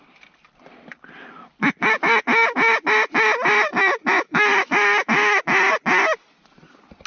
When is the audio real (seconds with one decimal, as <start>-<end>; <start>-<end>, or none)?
0.0-3.7; 5.4-7.1